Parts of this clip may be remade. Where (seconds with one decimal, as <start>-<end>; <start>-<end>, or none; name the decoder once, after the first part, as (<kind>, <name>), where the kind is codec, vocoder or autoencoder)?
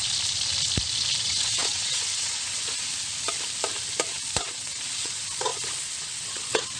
1.2-2.9 (vocoder, WaveNeXt); 4.4-5.5; 6.0-6.8